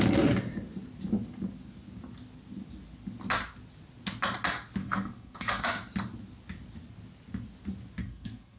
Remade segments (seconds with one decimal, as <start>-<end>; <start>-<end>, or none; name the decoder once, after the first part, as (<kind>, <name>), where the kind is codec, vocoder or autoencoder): 4.8-5.6 (codec, SNAC); 8.0-8.6